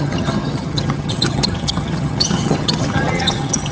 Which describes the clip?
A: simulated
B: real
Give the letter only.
A